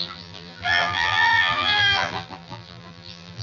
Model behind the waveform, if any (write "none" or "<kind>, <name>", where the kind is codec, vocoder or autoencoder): vocoder, BigVGAN v2